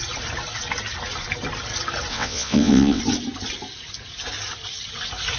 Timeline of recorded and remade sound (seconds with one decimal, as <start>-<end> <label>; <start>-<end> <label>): 0.0-2.1 recorded; 2.1-3.0 remade; 3.0-5.4 recorded